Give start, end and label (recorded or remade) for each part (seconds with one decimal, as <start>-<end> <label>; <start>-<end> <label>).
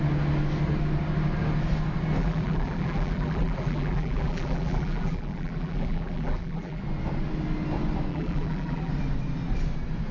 0.0-2.2 recorded; 2.2-6.8 remade; 6.8-8.1 recorded; 8.1-8.9 remade; 8.9-10.1 recorded